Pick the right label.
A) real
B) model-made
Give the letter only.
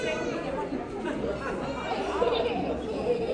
A